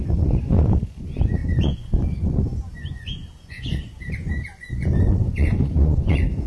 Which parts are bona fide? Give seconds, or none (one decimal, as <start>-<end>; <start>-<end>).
none